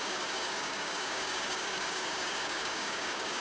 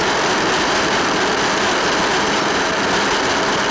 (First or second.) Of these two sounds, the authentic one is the second